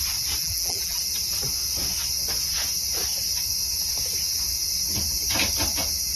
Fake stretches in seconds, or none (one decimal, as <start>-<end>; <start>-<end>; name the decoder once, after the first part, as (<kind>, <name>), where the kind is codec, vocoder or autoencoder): 0.4-1.0 (vocoder, BigVGAN v2)